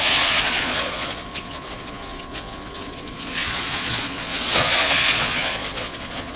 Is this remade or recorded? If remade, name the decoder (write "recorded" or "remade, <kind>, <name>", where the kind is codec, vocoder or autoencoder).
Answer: remade, vocoder, Vocos